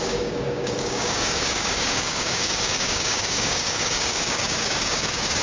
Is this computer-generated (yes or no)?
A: yes